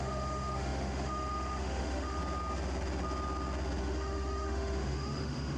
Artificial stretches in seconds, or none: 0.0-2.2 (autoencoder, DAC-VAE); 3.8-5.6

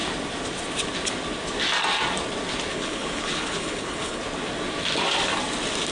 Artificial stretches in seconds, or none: 2.7-4.2 (codec, HILCodec)

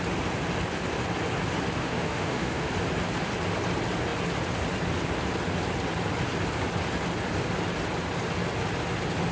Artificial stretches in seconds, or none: 1.8-2.7 (autoencoder, DAC-VAE)

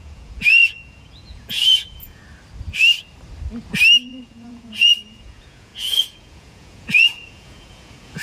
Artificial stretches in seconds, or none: 0.0-2.2 (vocoder, Vocos); 4.1-8.2

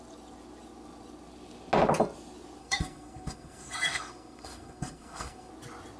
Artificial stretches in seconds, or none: 2.6-5.5 (codec, SNAC)

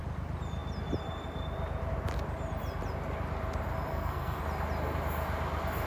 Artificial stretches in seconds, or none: 3.9-4.4 (codec, SNAC)

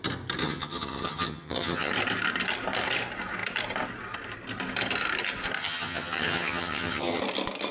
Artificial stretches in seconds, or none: 0.4-1.9 (vocoder, HiFi-GAN); 5.6-7.2